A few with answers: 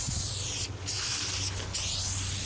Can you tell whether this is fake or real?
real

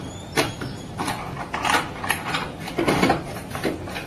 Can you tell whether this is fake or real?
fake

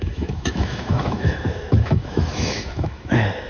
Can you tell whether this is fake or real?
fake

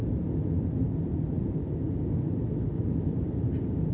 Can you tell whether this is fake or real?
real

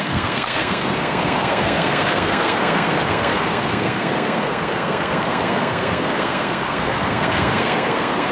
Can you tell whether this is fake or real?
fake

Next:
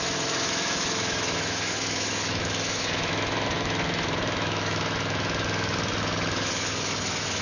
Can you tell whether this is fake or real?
fake